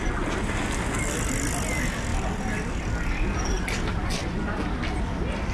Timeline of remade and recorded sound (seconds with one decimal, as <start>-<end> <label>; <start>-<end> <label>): 0.0-5.5 recorded